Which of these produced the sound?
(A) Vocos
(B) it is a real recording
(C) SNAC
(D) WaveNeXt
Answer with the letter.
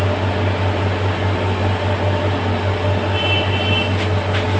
B